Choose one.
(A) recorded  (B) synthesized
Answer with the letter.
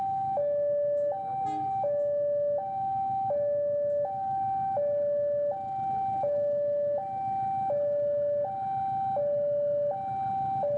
A